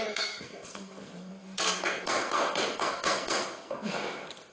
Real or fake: fake